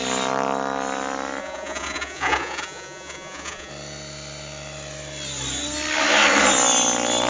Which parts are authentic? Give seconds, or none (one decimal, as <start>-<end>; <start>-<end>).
0.0-1.4; 3.7-7.3

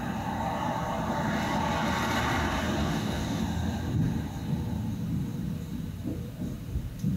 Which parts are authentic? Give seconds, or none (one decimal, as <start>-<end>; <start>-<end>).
0.0-2.8; 3.4-7.2

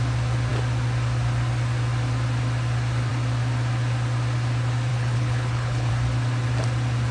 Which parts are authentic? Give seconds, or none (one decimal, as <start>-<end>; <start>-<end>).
0.0-4.9; 5.9-7.1

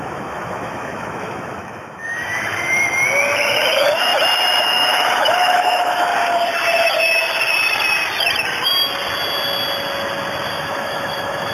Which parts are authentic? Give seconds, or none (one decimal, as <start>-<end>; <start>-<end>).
4.1-4.6; 6.1-10.5

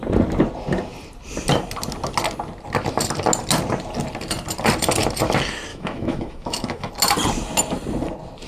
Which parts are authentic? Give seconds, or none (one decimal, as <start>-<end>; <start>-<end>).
0.0-5.7; 6.9-8.5

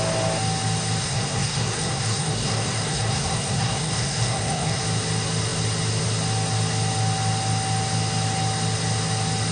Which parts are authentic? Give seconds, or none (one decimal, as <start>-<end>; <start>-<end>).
0.0-1.0; 4.8-9.5

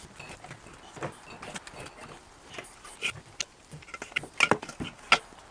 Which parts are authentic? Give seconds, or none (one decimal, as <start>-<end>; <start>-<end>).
0.0-5.5